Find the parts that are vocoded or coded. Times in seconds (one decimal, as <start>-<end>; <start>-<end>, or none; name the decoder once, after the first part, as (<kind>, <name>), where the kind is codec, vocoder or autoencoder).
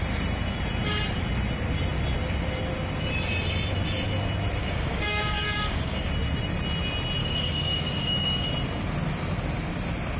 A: 4.6-6.1 (codec, DAC); 7.2-8.5